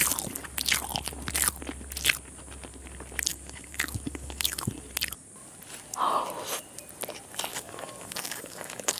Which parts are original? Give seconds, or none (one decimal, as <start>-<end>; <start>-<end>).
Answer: 0.0-3.3; 4.7-7.5